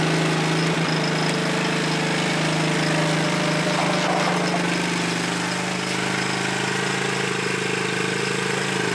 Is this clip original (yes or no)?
yes